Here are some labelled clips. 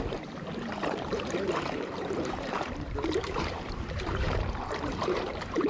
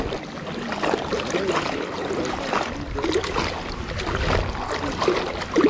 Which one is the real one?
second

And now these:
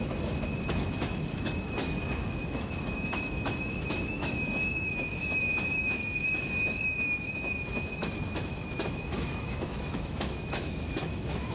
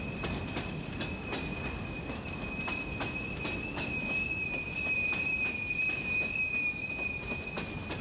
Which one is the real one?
second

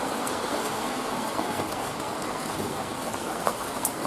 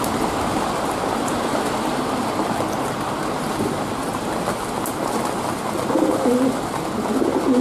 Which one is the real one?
second